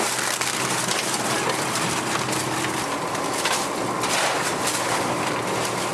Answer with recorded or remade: recorded